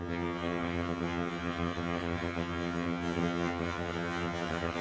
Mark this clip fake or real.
fake